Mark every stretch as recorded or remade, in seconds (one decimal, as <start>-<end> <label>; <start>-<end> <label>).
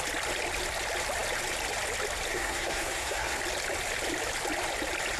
0.0-2.3 recorded; 2.3-3.4 remade; 3.4-5.2 recorded